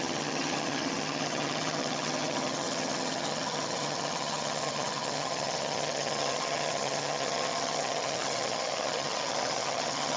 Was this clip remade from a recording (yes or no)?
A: yes